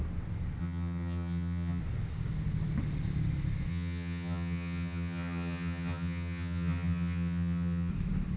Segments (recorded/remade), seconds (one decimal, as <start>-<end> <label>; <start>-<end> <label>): 0.0-0.6 recorded; 0.6-1.8 remade; 1.8-3.7 recorded; 3.7-7.9 remade; 7.9-8.4 recorded